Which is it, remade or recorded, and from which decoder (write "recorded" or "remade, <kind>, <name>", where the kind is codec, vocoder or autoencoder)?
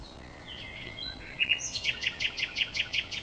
remade, vocoder, Vocos